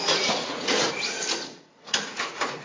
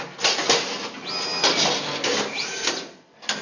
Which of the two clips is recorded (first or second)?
second